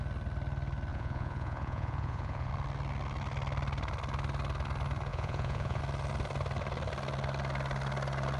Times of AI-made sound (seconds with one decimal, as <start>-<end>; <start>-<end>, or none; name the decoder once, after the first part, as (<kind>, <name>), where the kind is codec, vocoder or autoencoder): 0.9-2.5 (vocoder, Vocos); 5.1-5.8